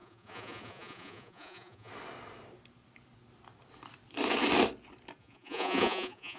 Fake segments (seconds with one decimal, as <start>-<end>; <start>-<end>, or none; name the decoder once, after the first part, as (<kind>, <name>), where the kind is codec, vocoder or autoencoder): 0.0-1.9 (vocoder, Vocos); 5.2-6.4